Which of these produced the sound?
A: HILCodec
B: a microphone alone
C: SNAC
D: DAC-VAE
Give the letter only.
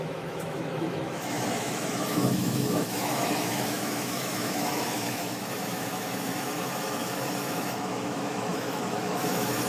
D